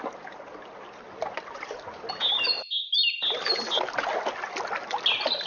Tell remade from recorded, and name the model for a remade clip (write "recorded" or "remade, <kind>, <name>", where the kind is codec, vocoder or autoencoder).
recorded